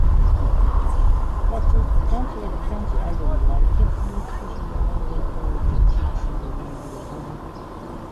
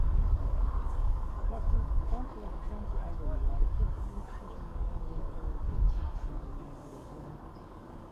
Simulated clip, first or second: second